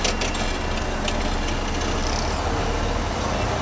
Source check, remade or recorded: recorded